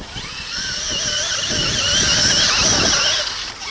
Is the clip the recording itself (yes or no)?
yes